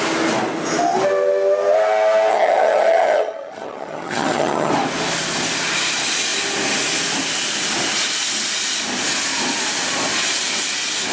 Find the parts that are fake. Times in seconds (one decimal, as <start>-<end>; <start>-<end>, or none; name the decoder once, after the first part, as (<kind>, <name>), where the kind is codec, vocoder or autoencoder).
2.3-4.7 (vocoder, HiFi-GAN)